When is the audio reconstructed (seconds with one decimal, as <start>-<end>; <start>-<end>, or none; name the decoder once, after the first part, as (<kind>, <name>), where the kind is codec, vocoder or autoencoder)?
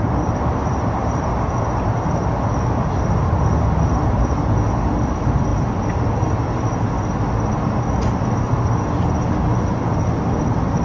none